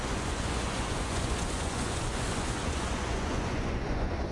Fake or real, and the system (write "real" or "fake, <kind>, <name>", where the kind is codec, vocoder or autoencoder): fake, vocoder, Vocos